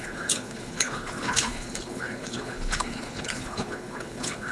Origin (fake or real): fake